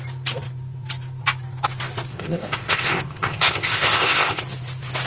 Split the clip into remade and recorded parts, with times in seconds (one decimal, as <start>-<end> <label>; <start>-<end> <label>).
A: 0.0-2.1 recorded; 2.1-4.4 remade; 4.4-5.1 recorded